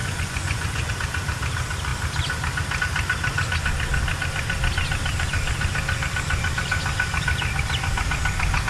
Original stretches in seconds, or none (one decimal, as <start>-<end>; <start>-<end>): 0.9-8.7